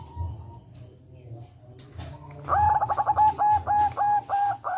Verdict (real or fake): real